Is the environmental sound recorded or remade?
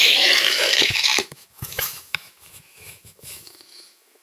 remade